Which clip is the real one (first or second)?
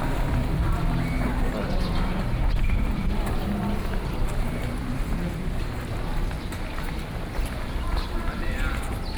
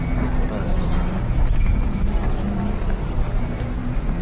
second